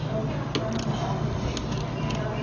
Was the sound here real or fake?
real